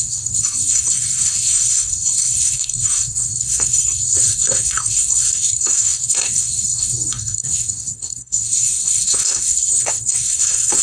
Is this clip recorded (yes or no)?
no